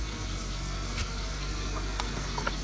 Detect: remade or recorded remade